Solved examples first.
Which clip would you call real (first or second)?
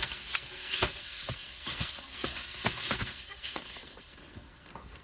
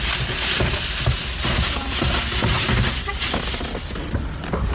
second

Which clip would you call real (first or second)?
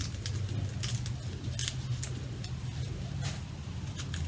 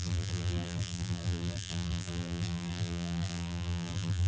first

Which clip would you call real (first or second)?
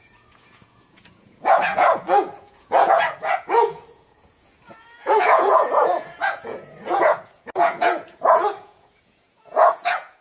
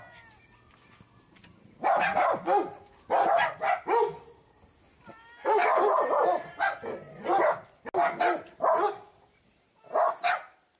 second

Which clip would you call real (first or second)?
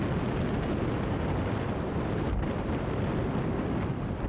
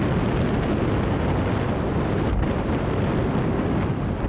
second